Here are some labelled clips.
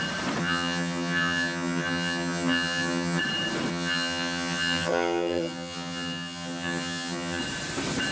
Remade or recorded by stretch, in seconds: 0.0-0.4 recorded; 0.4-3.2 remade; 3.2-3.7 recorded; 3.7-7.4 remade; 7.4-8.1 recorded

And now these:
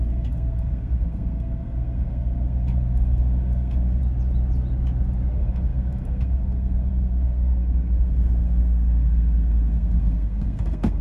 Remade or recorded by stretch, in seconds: 0.0-4.0 remade; 4.0-5.3 recorded; 5.3-11.0 remade

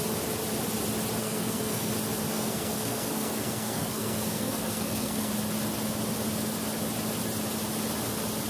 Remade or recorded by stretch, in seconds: 0.0-1.2 recorded; 1.2-1.9 remade; 1.9-2.3 recorded; 2.3-5.3 remade; 5.3-8.5 recorded

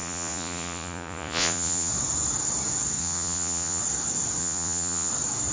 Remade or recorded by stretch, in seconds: 0.0-1.9 remade; 1.9-3.0 recorded; 3.0-3.8 remade; 3.8-4.4 recorded; 4.4-5.1 remade; 5.1-5.5 recorded